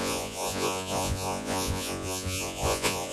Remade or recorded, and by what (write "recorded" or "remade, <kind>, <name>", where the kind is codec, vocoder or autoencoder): remade, vocoder, Vocos